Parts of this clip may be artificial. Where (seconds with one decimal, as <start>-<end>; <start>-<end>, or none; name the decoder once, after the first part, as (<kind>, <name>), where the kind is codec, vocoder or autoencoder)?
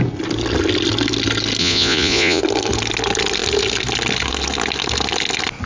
1.6-2.4 (vocoder, Vocos)